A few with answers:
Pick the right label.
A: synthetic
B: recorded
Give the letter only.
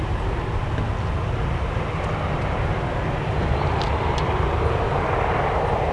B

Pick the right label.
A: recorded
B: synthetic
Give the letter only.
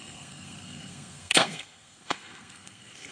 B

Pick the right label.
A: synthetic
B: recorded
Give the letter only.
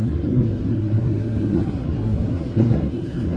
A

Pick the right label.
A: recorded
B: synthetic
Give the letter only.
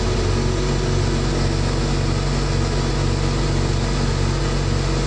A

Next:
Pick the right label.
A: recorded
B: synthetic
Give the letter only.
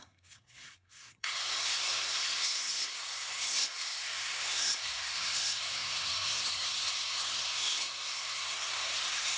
B